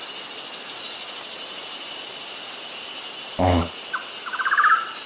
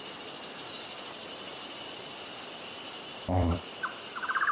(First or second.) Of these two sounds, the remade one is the second